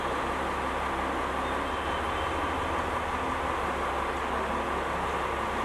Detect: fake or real real